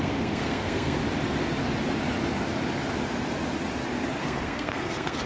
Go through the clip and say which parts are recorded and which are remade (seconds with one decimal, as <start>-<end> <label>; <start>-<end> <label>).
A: 0.0-1.0 remade; 1.0-4.2 recorded; 4.2-5.3 remade